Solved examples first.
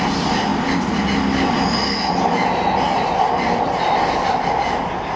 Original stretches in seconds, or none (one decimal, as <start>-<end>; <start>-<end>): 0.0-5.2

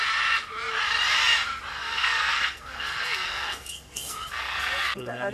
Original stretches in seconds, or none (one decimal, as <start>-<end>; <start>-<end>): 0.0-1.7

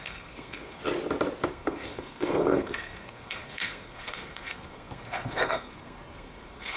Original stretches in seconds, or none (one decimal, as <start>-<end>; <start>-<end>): 0.8-1.5

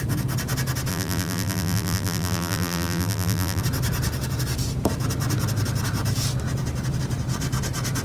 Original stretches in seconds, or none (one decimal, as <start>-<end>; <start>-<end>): 0.0-0.9; 3.6-8.0